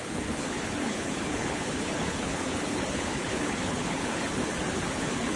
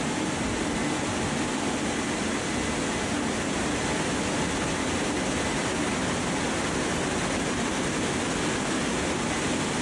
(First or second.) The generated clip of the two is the first